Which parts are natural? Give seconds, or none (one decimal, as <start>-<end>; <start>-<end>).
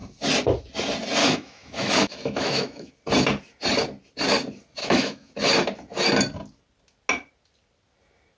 0.0-1.2; 2.9-4.8; 5.3-8.4